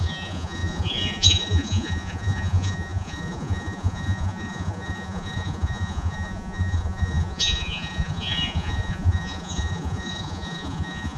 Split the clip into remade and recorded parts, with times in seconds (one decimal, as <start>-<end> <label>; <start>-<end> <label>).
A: 0.0-11.2 remade